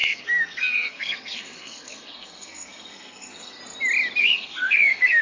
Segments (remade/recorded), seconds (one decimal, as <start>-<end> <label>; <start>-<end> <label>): 0.0-3.6 remade; 3.6-4.2 recorded; 4.2-5.2 remade